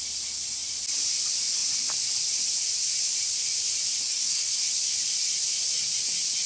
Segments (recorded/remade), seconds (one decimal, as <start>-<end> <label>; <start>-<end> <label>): 0.0-4.0 recorded; 4.0-4.7 remade; 4.7-6.5 recorded